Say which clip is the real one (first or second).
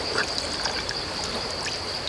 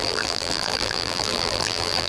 first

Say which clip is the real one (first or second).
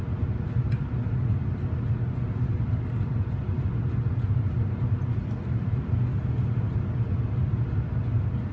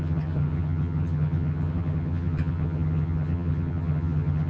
first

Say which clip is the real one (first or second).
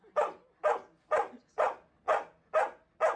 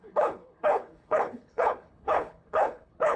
first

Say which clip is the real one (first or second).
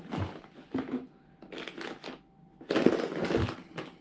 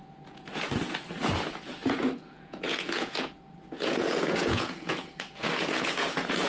first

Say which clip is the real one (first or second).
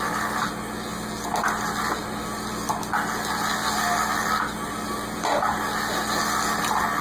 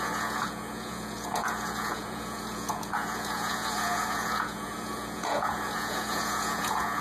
first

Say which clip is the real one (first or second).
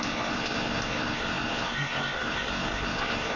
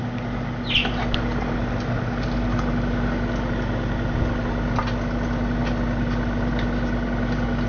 second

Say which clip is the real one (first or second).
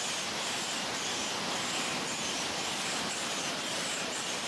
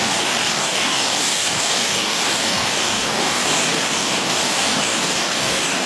first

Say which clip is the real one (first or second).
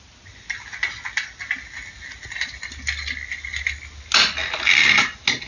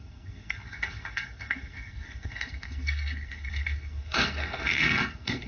first